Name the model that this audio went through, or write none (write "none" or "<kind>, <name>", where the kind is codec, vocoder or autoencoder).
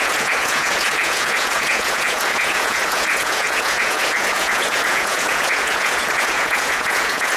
vocoder, Vocos